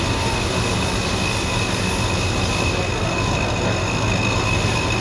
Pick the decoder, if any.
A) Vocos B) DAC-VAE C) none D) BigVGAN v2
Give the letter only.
C